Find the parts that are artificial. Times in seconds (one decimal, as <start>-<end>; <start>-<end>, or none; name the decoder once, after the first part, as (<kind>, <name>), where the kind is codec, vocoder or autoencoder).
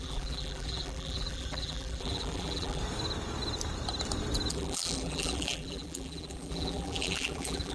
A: 0.0-2.8 (vocoder, BigVGAN v2); 4.5-7.7